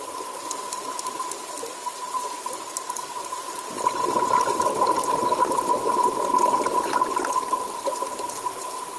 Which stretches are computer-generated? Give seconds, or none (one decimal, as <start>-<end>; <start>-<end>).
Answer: none

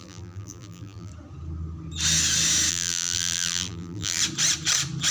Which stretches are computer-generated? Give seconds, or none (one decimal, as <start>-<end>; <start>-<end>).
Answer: 0.0-1.1; 2.7-4.2

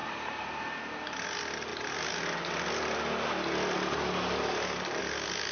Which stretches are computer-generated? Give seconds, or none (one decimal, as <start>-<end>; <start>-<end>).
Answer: none

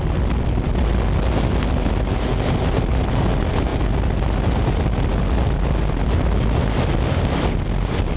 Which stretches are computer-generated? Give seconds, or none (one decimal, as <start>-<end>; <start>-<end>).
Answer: none

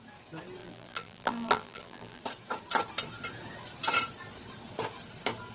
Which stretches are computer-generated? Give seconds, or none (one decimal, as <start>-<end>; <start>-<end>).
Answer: 0.6-2.2

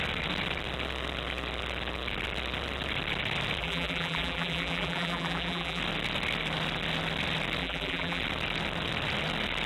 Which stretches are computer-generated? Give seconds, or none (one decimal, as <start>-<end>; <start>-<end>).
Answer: 3.6-5.8; 7.6-8.2